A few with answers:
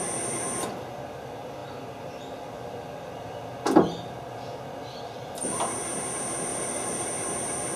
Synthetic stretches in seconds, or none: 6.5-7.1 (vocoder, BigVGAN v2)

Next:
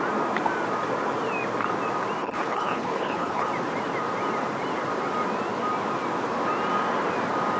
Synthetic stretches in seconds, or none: 2.2-3.5 (codec, HILCodec)

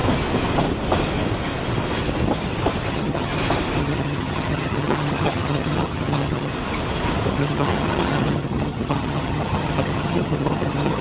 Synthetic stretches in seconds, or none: 2.9-3.3 (vocoder, HiFi-GAN); 3.8-6.5; 7.3-11.0